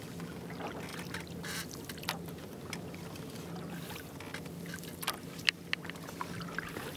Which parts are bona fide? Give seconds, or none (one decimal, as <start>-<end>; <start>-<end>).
0.0-7.0